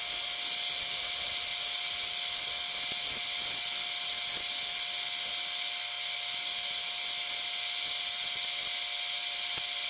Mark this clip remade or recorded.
recorded